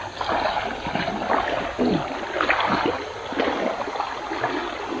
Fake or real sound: real